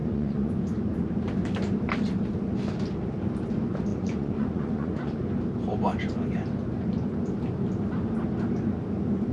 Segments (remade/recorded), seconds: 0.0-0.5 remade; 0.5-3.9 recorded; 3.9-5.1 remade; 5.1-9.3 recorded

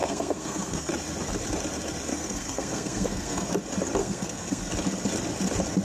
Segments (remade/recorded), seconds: 0.0-0.9 remade; 0.9-2.1 recorded; 2.1-3.5 remade; 3.5-4.0 recorded; 4.0-4.7 remade; 4.7-5.8 recorded